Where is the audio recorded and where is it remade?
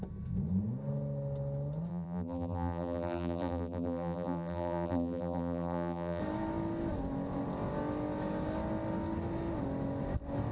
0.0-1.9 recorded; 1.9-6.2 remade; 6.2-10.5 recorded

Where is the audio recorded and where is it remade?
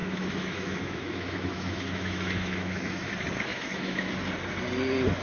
0.0-3.1 remade; 3.1-3.5 recorded; 3.5-4.1 remade; 4.1-5.2 recorded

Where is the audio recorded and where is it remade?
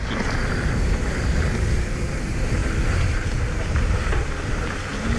0.0-5.2 recorded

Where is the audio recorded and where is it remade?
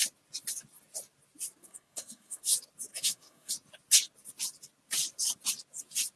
0.0-1.6 recorded; 1.6-2.4 remade; 2.4-2.9 recorded; 2.9-3.5 remade; 3.5-6.2 recorded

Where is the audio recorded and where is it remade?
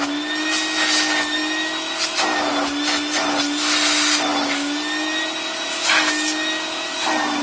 0.0-7.4 recorded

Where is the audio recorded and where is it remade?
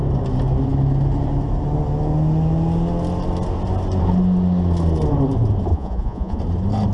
0.0-5.7 recorded; 5.7-6.4 remade; 6.4-6.9 recorded